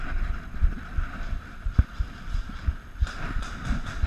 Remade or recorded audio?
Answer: recorded